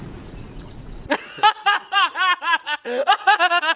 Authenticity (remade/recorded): remade